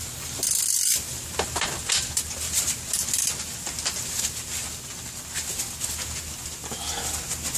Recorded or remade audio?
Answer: recorded